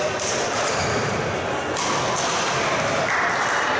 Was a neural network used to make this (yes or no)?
no